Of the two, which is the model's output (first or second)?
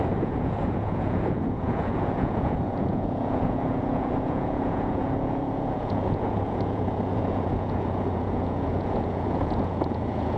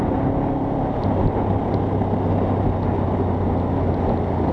first